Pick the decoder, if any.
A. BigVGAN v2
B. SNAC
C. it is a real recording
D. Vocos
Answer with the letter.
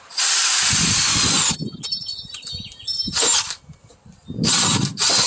A